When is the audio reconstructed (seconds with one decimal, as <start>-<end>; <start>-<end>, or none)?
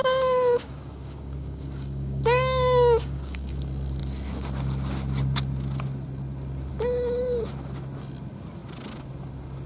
0.0-3.6